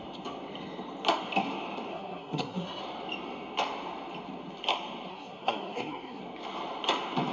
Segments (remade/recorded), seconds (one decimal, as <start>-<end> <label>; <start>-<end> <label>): 0.0-1.9 recorded; 1.9-2.8 remade; 2.8-5.1 recorded; 5.1-6.2 remade; 6.2-7.3 recorded